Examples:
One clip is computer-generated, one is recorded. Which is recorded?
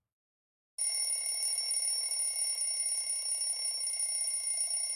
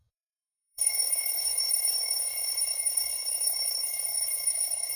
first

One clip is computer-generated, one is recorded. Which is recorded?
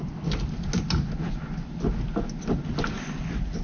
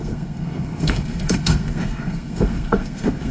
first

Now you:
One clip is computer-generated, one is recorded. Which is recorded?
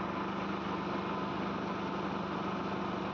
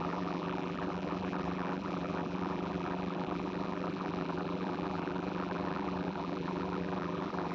first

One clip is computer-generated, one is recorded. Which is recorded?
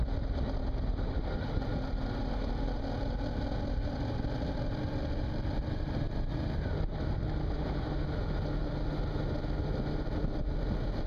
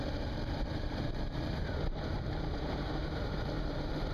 first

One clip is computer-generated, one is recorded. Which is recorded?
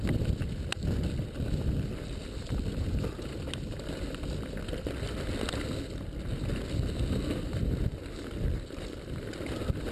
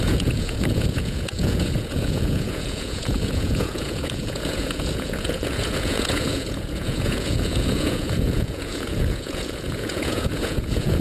first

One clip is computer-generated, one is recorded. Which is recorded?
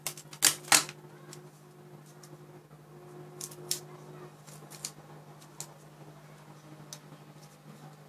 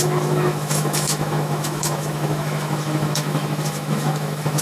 first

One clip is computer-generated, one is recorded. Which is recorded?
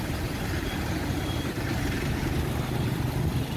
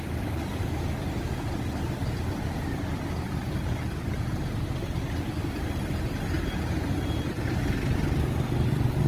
second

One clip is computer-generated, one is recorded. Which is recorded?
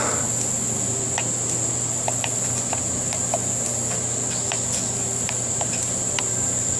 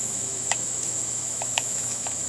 first